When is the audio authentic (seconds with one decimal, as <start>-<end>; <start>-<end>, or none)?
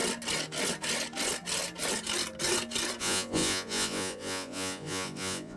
0.0-3.0